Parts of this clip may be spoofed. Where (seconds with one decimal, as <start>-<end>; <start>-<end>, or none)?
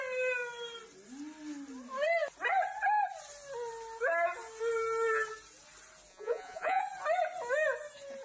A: 6.1-6.8